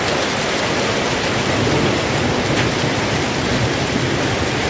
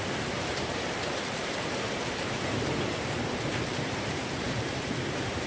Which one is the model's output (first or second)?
second